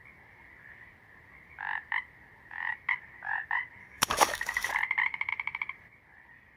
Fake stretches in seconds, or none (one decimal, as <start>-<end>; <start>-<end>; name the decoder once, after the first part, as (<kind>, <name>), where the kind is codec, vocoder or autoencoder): 3.8-4.7 (codec, DAC)